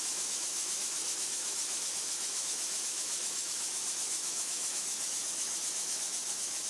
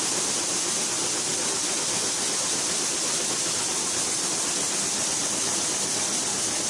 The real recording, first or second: second